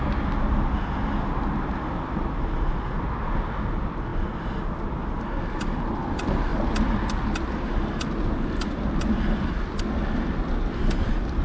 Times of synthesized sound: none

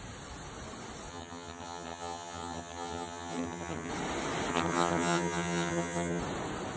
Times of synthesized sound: 1.1-3.9 (vocoder, HiFi-GAN); 4.5-6.2

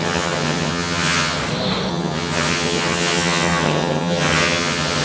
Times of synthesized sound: 0.0-1.4 (vocoder, HiFi-GAN); 1.9-5.0

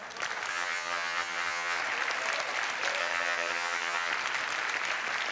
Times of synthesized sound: 0.5-1.8 (vocoder, HiFi-GAN); 3.0-4.1

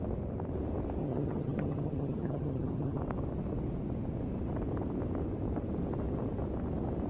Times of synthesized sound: 1.0-3.0 (vocoder, HiFi-GAN)